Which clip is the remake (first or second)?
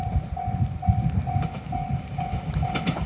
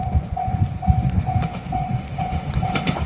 second